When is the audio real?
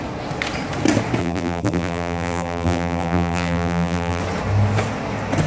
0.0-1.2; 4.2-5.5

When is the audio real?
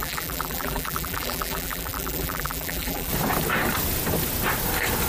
3.1-5.1